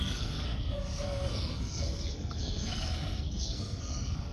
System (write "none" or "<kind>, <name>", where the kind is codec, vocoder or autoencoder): codec, SNAC